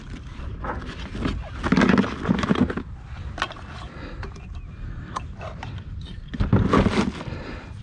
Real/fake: real